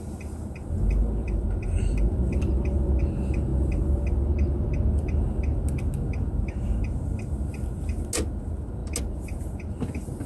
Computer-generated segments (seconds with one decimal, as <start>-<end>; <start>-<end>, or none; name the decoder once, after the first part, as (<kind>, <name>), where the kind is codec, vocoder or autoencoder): 1.0-3.0 (vocoder, BigVGAN v2)